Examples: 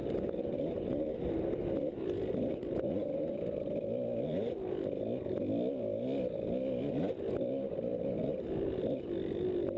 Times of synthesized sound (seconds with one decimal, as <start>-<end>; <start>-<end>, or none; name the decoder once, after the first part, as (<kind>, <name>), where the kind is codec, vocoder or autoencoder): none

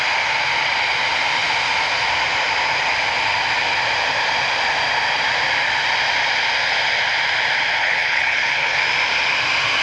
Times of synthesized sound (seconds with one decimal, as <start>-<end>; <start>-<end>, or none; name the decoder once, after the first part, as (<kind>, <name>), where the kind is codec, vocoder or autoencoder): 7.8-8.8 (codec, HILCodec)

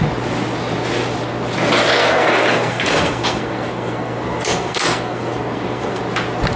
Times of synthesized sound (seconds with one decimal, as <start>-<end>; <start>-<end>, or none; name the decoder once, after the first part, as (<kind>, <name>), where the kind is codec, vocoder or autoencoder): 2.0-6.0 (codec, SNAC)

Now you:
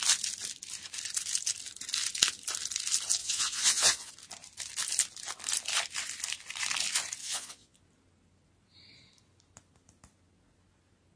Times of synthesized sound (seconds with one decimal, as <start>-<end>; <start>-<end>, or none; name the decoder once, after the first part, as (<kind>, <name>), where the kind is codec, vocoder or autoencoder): 3.2-4.1 (vocoder, Vocos); 7.2-7.8

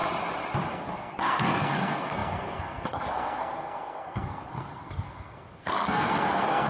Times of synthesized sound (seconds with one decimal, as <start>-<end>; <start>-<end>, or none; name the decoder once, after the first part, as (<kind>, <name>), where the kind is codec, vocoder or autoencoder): 0.7-6.7 (codec, SNAC)

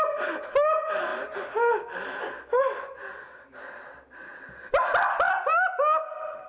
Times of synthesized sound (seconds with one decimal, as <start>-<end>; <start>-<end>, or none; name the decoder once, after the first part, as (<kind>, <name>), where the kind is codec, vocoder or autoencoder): none

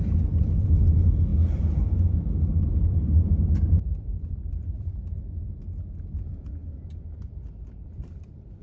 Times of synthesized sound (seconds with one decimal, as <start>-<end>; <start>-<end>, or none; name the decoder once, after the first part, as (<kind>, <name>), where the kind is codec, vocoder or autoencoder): 0.0-6.6 (vocoder, BigVGAN v2)

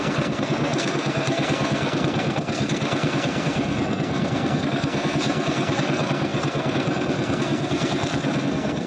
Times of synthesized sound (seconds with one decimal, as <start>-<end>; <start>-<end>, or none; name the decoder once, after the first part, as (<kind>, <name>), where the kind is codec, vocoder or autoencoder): 0.0-8.9 (codec, SNAC)